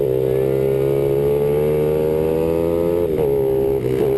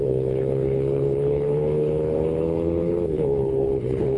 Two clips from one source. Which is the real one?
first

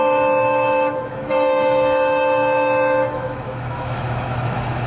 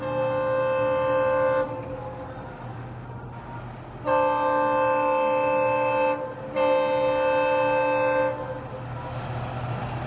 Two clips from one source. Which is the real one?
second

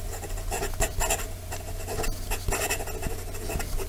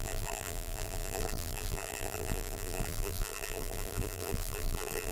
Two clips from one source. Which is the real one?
first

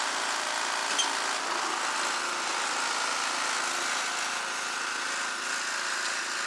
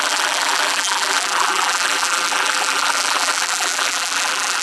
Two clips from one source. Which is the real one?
first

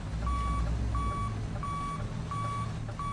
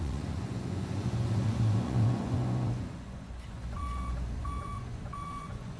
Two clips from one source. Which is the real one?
first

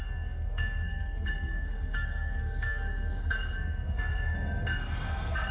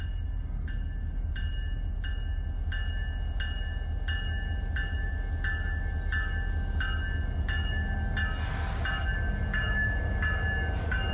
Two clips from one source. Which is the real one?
second